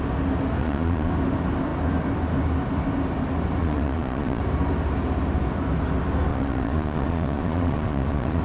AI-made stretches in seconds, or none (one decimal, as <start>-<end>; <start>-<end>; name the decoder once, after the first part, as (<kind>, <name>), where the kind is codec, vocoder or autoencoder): 0.6-1.1 (vocoder, Vocos); 3.6-4.4; 6.3-8.4